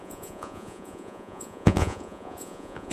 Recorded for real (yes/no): no